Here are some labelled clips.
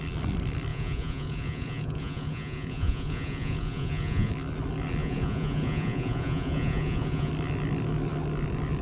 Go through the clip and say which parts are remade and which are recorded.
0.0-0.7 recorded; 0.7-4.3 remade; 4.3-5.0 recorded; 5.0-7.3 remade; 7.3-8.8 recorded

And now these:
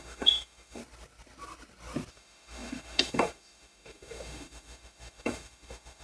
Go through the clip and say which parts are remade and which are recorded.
0.0-0.8 remade; 0.8-2.1 recorded; 2.1-6.0 remade

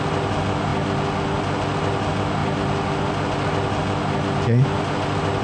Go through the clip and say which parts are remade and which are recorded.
0.0-5.4 recorded

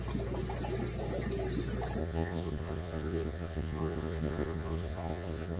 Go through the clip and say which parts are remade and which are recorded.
0.0-2.0 recorded; 2.0-5.6 remade

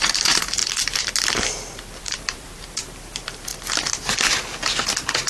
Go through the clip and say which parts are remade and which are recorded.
0.0-0.6 remade; 0.6-2.0 recorded; 2.0-3.5 remade; 3.5-5.3 recorded

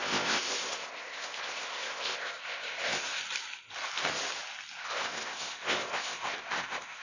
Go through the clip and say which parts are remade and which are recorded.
0.0-3.2 remade; 3.2-4.8 recorded; 4.8-7.0 remade